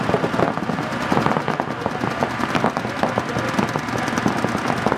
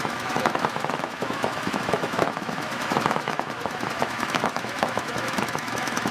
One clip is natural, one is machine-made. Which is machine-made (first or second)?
second